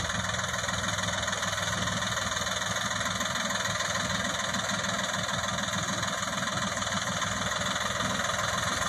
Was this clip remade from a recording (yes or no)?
no